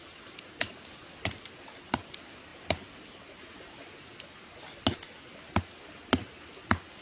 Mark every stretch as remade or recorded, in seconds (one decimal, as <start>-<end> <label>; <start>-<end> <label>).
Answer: 0.0-7.0 recorded